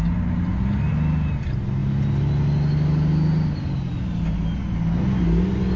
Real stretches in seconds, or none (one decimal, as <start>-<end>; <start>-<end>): 0.0-5.8